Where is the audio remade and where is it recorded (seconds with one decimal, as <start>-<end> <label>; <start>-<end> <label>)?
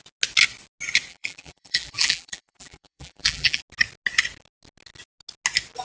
0.0-1.1 recorded; 1.1-3.6 remade; 3.6-5.8 recorded